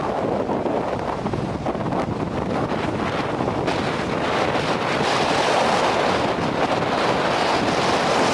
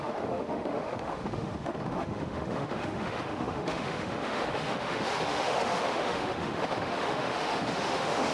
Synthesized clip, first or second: second